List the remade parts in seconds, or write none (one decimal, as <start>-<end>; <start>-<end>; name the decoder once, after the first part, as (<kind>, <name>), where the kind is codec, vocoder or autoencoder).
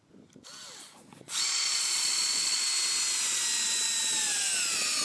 0.8-2.6 (vocoder, Vocos)